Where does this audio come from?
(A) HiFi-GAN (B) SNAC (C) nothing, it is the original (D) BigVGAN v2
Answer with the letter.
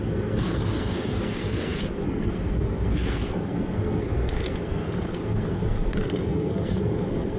B